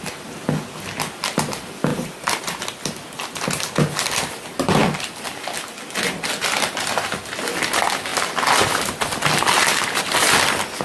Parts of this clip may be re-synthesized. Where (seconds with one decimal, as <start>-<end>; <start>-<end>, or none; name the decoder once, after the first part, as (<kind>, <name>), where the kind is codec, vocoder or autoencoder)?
1.9-2.6 (vocoder, BigVGAN v2)